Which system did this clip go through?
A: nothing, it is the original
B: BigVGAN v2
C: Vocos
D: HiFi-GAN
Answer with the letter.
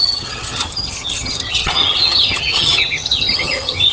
D